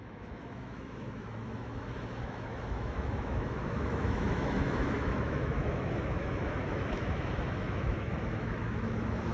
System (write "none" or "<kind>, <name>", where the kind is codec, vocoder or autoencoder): autoencoder, DAC-VAE